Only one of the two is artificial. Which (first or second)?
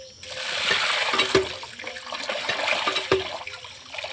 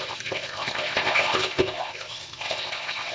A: second